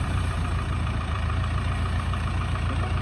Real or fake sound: fake